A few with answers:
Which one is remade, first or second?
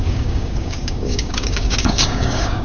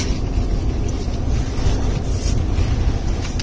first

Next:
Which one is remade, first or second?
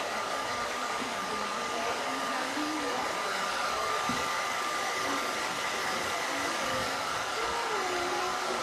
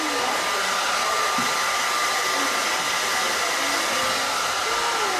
first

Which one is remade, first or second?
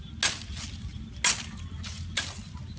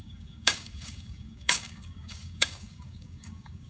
second